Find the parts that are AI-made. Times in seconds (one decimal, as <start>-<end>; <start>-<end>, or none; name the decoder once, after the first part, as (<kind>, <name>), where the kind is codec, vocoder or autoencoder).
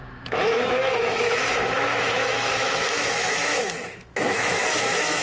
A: 0.0-5.2 (autoencoder, DAC-VAE)